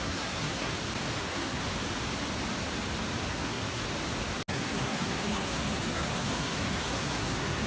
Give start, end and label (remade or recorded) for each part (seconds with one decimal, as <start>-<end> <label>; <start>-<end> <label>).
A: 0.0-0.7 remade; 0.7-1.2 recorded; 1.2-1.6 remade; 1.6-3.3 recorded; 3.3-3.8 remade; 3.8-4.5 recorded; 4.5-7.7 remade